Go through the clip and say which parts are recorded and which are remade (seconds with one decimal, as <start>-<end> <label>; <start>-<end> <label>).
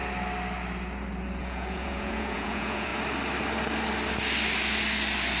0.0-1.4 recorded; 1.4-2.9 remade; 2.9-5.4 recorded